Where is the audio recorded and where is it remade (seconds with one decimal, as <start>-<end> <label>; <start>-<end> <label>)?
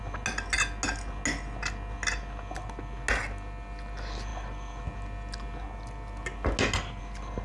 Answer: 0.0-7.4 recorded